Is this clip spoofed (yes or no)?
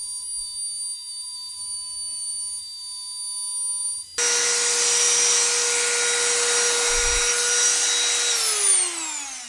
no